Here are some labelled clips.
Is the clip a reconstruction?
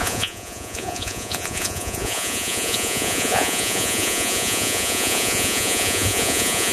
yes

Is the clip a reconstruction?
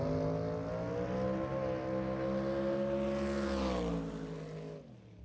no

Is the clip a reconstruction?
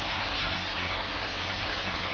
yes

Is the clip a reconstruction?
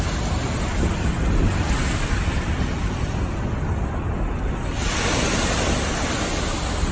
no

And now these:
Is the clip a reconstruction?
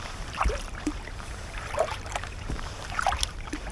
yes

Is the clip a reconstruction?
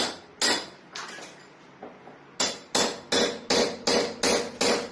no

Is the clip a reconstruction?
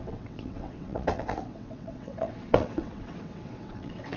yes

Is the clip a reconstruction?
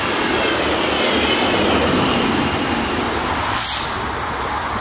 no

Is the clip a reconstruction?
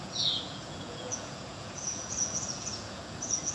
yes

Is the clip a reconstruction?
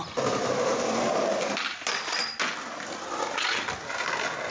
no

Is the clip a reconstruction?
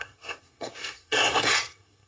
yes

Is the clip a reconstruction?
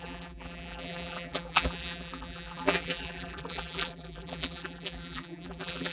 yes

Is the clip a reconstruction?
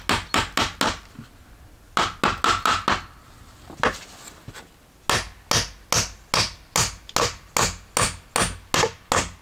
no